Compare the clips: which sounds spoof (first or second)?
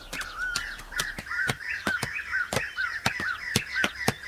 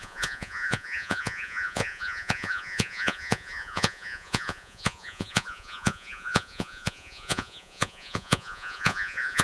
second